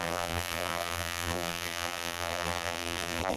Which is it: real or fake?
fake